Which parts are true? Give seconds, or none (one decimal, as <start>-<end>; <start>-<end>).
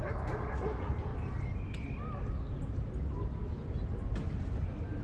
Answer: 0.0-5.0